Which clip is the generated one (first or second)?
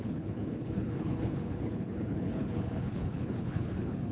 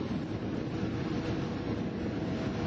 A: first